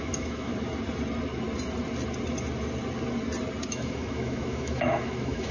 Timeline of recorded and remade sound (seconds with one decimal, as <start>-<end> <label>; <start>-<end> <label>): 0.0-0.5 remade; 0.5-3.7 recorded; 3.7-5.5 remade

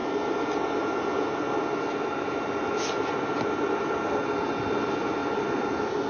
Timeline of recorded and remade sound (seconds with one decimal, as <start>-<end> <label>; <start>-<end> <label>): 0.0-6.1 recorded

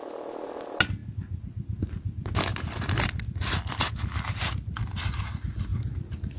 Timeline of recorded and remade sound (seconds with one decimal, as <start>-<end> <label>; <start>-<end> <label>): 0.0-1.0 recorded; 1.0-1.8 remade; 1.8-2.5 recorded; 2.5-4.0 remade; 4.0-6.4 recorded

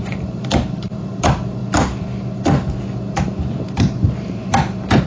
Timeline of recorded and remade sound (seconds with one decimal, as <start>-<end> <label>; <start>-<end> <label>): 0.0-1.6 remade; 1.6-3.5 recorded; 3.5-5.1 remade

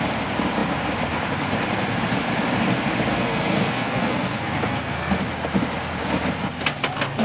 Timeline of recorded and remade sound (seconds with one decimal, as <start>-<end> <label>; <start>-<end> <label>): 0.0-3.1 recorded; 3.1-5.2 remade; 5.2-7.2 recorded

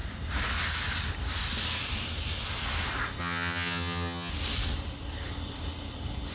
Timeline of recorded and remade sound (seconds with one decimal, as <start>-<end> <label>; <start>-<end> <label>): 0.0-3.2 recorded; 3.2-4.3 remade; 4.3-6.3 recorded

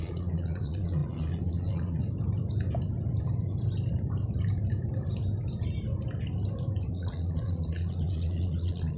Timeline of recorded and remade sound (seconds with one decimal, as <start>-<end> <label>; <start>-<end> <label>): 0.0-2.0 remade; 2.0-6.9 recorded; 6.9-9.0 remade

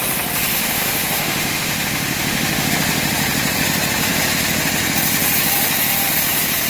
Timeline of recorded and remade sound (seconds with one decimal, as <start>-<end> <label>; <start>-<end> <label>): 0.0-0.5 recorded; 0.5-2.7 remade; 2.7-6.7 recorded